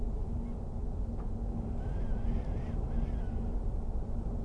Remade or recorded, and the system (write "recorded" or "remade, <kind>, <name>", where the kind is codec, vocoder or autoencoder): recorded